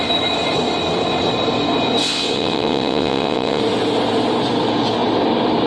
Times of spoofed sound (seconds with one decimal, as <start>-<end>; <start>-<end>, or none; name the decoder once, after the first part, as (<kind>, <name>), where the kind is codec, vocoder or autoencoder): 2.0-3.6 (vocoder, WaveNeXt)

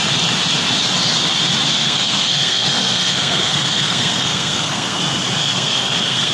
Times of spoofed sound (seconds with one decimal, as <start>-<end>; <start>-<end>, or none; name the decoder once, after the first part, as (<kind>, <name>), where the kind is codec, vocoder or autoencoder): 1.8-5.0 (codec, SNAC); 5.4-6.3

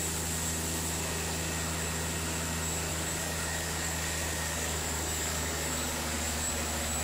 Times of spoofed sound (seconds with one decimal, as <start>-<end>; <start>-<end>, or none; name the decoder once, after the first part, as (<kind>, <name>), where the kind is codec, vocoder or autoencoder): 2.9-6.5 (codec, DAC)

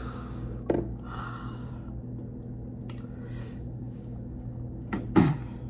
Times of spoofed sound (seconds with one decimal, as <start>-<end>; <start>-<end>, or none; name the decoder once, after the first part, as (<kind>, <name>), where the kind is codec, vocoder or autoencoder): 0.0-1.7 (codec, DAC); 3.4-5.3